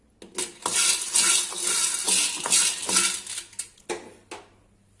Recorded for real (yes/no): yes